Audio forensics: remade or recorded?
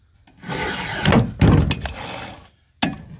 recorded